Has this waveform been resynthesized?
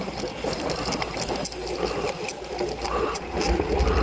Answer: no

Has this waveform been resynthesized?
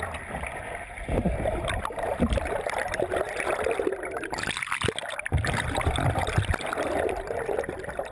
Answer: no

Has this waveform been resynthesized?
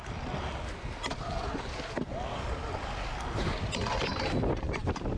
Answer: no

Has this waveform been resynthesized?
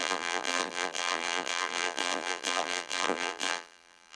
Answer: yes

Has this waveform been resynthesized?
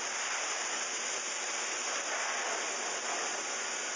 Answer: no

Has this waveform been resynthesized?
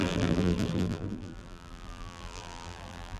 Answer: yes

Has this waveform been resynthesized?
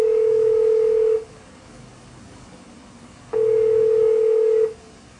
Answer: yes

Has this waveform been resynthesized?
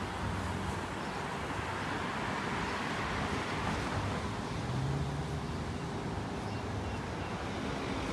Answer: no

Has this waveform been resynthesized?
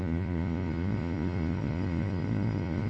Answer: yes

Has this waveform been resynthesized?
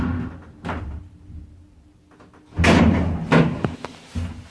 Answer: no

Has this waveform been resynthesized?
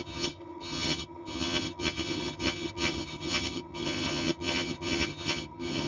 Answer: yes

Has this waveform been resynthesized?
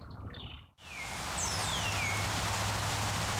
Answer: no